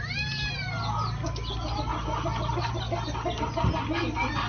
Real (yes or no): yes